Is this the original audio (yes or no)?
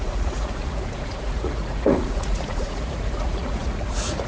no